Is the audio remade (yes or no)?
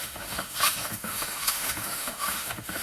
yes